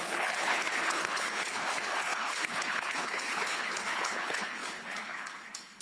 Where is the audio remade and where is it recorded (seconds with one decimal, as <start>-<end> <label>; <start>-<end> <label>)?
0.0-5.8 remade